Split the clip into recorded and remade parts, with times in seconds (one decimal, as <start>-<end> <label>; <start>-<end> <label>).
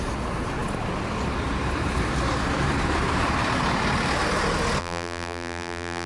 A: 0.0-4.8 recorded; 4.8-6.1 remade